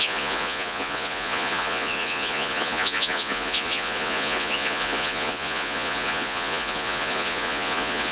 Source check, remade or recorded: remade